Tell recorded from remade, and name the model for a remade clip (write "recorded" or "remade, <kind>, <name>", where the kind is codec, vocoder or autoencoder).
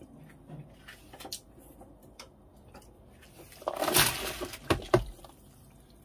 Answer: recorded